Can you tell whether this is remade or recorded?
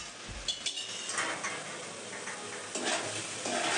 recorded